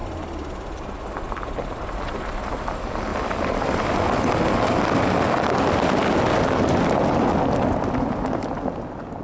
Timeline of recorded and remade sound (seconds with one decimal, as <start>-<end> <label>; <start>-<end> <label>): 0.0-9.2 recorded